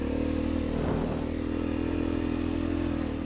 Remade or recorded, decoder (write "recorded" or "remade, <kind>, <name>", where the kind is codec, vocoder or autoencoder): recorded